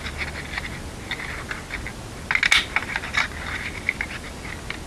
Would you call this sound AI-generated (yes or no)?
no